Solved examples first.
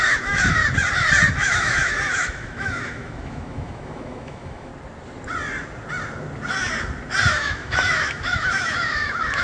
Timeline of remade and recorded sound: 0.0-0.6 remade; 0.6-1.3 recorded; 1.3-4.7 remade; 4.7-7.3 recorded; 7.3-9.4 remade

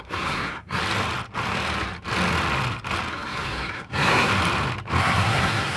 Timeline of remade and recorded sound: 0.0-0.8 remade; 0.8-3.1 recorded; 3.1-4.3 remade; 4.3-5.0 recorded; 5.0-5.8 remade